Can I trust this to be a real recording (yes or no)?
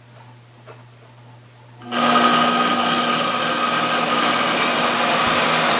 yes